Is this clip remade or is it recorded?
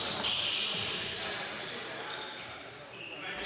remade